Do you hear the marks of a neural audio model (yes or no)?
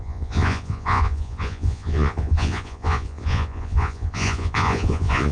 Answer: yes